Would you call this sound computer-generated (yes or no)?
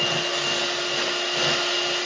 no